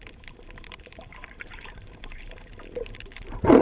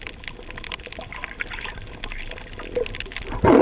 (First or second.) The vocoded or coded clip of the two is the first